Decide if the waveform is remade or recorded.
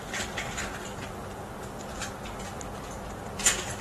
recorded